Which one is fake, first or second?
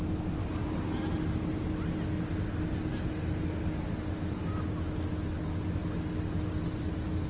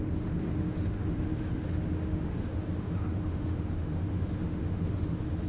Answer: second